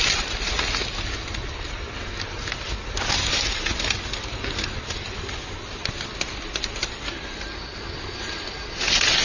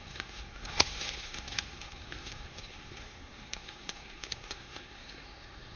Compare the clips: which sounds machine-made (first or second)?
second